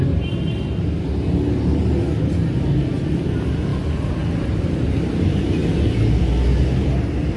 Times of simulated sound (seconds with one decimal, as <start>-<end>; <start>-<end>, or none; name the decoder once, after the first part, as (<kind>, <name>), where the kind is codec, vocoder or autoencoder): none